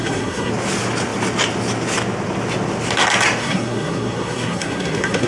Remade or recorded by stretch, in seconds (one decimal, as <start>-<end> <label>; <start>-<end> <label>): 0.0-0.5 remade; 0.5-3.4 recorded; 3.4-5.3 remade